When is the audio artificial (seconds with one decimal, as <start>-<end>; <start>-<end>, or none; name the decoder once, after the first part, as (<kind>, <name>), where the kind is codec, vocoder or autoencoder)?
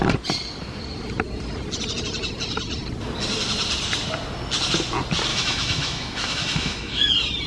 5.3-7.1 (autoencoder, DAC-VAE)